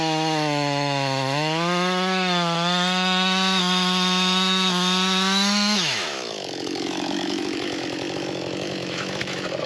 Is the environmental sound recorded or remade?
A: remade